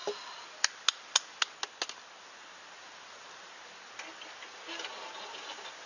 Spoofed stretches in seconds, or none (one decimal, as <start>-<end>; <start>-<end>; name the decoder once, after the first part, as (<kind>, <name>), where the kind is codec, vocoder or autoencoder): none